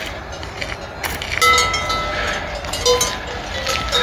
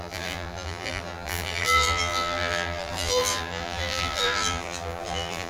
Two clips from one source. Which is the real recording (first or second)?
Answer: first